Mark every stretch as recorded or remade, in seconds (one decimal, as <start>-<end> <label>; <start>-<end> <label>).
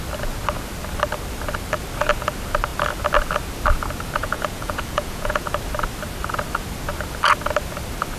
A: 0.0-4.2 recorded; 4.2-5.5 remade; 5.5-8.2 recorded